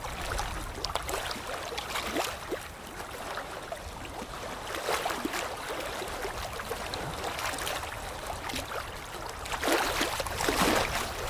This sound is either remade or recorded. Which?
recorded